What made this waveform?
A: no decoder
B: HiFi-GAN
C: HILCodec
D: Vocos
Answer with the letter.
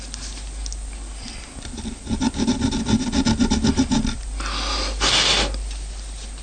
A